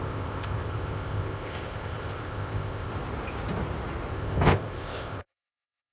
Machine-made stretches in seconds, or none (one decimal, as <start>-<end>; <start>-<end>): 0.0-2.9; 4.1-5.9